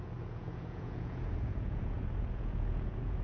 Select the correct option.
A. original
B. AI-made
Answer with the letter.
B